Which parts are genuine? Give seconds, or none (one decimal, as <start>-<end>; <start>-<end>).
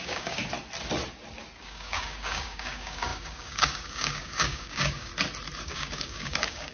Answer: 0.4-1.6; 5.1-5.6